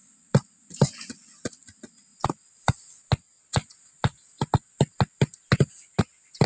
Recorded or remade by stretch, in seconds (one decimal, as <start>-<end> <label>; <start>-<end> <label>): 0.0-6.5 recorded